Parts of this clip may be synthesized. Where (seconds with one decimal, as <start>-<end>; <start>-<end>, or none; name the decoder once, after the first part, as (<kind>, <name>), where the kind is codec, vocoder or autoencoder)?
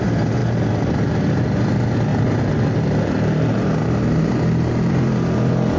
0.4-1.0 (vocoder, BigVGAN v2); 2.1-5.8